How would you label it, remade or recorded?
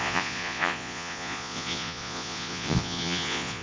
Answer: remade